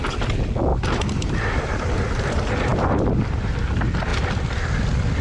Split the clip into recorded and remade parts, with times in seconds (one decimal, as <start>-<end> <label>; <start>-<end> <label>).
0.0-0.7 recorded; 0.7-2.2 remade; 2.2-2.7 recorded; 2.7-3.6 remade; 3.6-4.1 recorded; 4.1-4.7 remade; 4.7-5.2 recorded